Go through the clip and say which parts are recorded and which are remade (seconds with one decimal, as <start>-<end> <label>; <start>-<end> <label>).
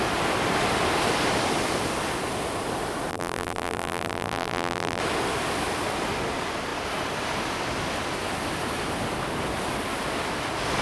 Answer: 0.0-3.1 recorded; 3.1-5.0 remade; 5.0-10.8 recorded